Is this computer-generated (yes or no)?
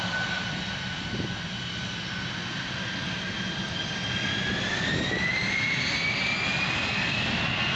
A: no